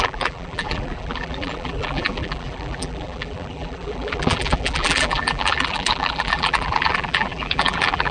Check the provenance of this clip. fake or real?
fake